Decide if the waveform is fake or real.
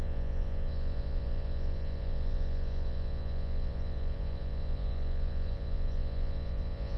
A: fake